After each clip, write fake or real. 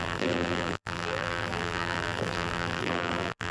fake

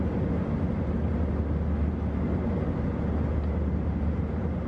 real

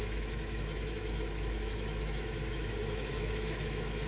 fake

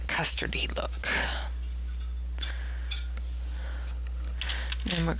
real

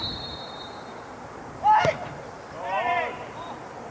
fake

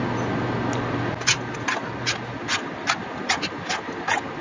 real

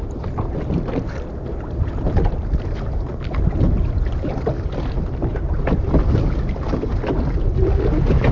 real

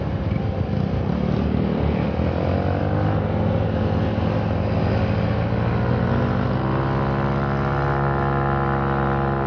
real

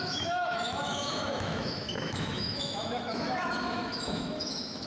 fake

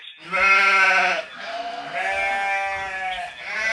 real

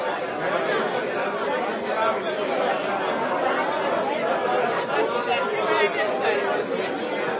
real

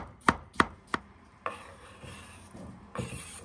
fake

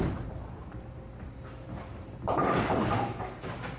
real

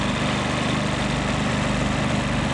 real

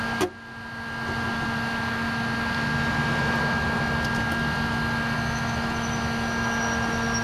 real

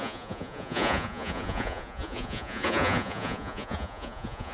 fake